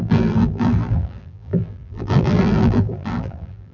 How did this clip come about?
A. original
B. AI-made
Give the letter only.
B